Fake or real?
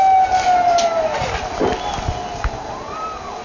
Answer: real